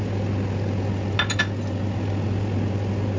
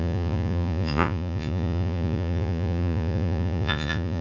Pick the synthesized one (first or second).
second